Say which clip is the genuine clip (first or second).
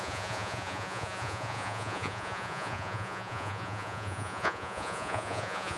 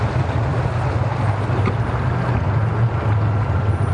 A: second